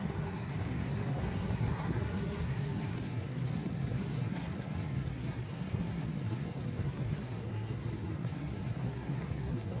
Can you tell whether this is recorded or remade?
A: remade